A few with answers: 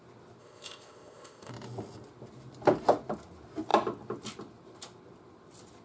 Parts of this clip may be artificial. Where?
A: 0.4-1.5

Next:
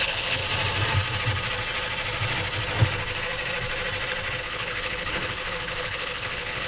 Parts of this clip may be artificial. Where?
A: 0.0-0.4; 4.4-6.7

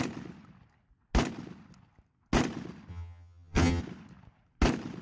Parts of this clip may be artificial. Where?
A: 2.9-3.8

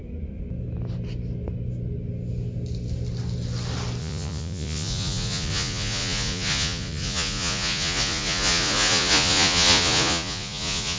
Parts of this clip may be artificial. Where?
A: 4.0-11.0

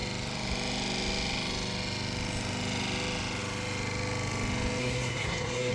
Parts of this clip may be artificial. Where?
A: 4.8-5.7

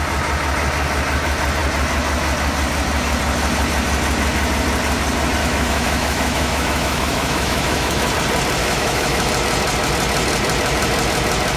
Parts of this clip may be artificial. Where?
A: 5.4-8.1; 8.6-9.3

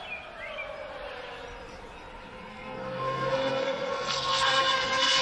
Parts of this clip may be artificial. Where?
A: 2.5-5.2